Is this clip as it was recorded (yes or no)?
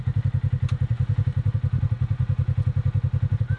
yes